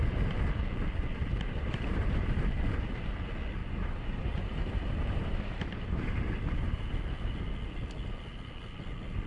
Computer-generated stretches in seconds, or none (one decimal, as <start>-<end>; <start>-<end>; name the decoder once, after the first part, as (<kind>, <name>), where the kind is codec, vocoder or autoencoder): 1.3-2.9 (vocoder, BigVGAN v2); 3.6-6.8

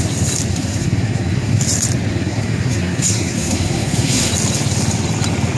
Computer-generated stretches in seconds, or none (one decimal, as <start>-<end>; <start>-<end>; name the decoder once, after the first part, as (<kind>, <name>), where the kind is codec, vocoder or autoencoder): 0.5-1.6 (codec, SNAC); 2.1-4.3